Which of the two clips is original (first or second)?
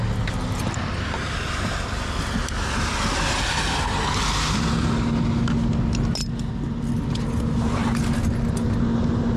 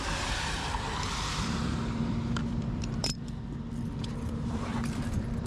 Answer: first